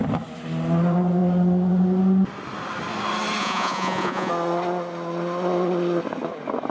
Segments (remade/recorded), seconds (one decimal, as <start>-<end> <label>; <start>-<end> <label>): 0.0-3.4 recorded; 3.4-4.3 remade; 4.3-6.7 recorded